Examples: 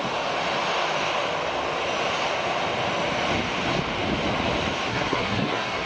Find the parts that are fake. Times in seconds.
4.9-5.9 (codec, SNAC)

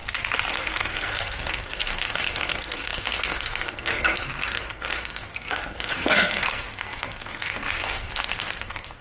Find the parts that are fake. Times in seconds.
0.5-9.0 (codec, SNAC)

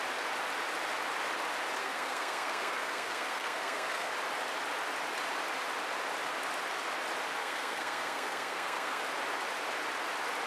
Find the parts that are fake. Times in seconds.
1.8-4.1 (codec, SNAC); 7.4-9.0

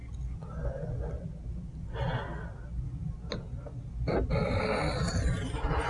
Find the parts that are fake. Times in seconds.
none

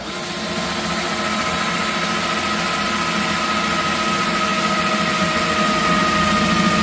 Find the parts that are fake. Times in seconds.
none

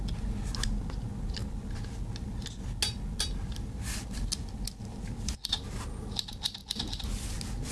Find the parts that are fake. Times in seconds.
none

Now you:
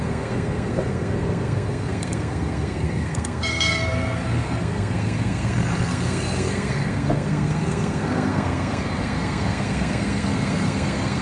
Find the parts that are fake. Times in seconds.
0.0-11.2 (codec, SNAC)